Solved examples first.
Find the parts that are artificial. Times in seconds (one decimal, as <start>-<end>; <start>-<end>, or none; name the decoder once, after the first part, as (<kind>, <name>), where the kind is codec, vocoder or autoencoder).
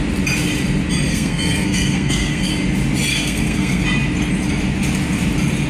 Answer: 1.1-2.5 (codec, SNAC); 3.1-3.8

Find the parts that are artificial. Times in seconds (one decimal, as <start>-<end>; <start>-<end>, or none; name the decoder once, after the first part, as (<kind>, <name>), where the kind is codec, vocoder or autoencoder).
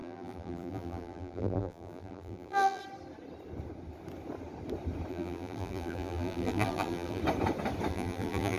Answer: 0.0-2.8 (vocoder, BigVGAN v2); 5.1-7.2; 7.9-8.6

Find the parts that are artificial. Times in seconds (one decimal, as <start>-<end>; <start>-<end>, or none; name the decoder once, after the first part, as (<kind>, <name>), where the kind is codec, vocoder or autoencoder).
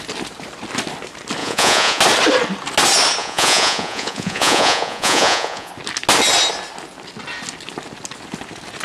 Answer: 1.4-2.0 (vocoder, Vocos); 3.2-5.7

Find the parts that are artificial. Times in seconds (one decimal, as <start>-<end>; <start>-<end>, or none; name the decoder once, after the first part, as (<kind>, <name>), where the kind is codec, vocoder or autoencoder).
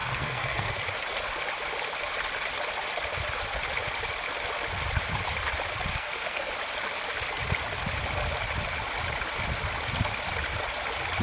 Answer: 0.0-0.8 (codec, SNAC); 5.9-6.5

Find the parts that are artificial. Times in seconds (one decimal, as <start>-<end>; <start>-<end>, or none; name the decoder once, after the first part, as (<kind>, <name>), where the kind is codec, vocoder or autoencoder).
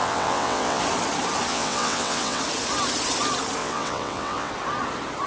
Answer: 0.0-0.8 (vocoder, WaveNeXt); 1.5-2.4; 3.6-4.5